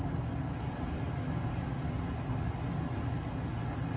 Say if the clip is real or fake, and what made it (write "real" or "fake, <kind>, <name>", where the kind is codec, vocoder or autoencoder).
real